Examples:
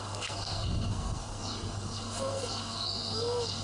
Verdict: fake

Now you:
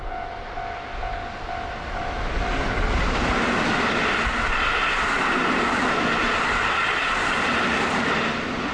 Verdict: real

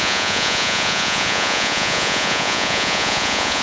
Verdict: fake